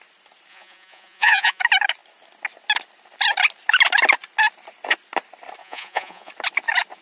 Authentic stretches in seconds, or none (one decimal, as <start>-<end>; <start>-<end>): 0.0-0.5; 1.6-5.6; 6.3-7.0